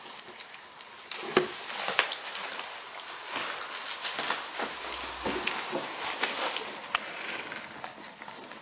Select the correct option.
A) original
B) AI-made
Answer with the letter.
A